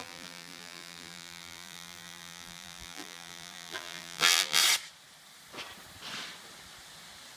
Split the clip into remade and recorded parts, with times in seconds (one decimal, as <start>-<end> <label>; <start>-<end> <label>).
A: 0.0-4.6 remade; 4.6-7.4 recorded